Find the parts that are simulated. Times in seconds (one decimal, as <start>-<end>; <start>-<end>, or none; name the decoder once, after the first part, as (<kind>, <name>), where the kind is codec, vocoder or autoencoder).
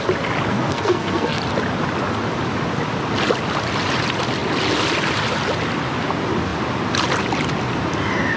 0.5-1.4 (codec, SNAC)